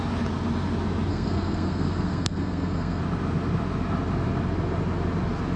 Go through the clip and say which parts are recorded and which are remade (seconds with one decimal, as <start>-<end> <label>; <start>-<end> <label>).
0.0-1.1 recorded; 1.1-3.0 remade; 3.0-5.6 recorded